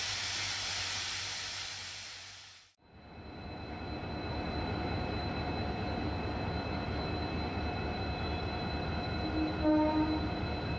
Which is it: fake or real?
real